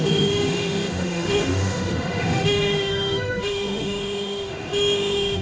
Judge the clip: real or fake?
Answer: fake